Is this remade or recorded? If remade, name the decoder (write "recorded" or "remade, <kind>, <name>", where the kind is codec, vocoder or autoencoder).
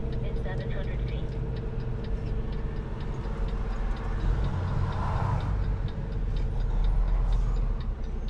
recorded